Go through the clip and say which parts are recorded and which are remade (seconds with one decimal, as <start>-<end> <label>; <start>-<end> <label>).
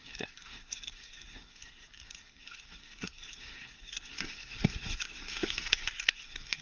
0.0-6.6 remade